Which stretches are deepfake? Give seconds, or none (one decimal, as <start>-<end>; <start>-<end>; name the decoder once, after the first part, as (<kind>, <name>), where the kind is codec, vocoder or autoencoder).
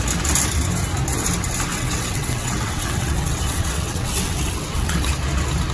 1.7-5.1 (vocoder, WaveNeXt)